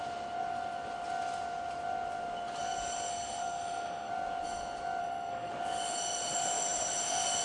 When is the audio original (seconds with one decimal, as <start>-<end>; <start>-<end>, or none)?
0.0-3.1; 4.1-5.0; 5.5-7.4